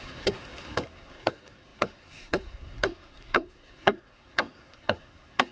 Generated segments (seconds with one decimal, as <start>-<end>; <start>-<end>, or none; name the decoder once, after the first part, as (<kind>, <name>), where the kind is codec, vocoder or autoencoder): 0.0-5.5 (codec, SNAC)